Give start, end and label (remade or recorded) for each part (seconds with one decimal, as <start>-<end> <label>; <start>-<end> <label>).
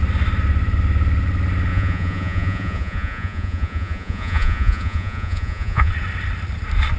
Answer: 0.0-1.7 recorded; 1.7-5.9 remade; 5.9-7.0 recorded